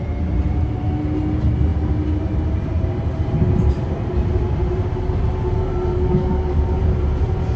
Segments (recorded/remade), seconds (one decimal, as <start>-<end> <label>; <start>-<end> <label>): 0.0-5.9 recorded; 5.9-6.8 remade; 6.8-7.6 recorded